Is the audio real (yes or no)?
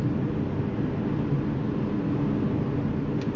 yes